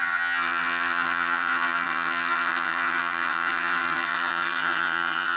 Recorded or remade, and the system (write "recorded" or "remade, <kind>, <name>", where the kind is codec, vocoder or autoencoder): remade, vocoder, HiFi-GAN